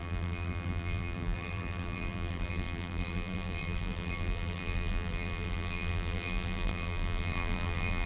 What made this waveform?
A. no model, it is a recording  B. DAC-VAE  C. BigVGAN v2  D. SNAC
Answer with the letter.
C